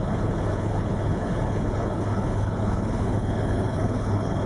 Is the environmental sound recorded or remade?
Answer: remade